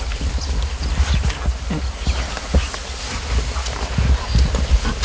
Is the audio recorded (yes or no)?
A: yes